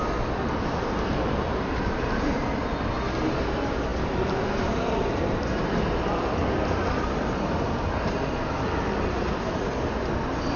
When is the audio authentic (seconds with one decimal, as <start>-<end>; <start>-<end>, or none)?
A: 0.0-10.6